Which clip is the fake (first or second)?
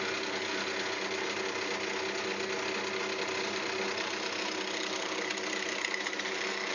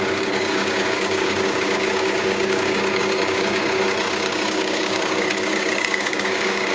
second